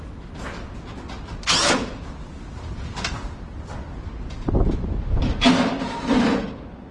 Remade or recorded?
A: recorded